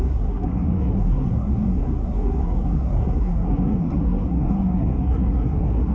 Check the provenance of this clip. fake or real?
fake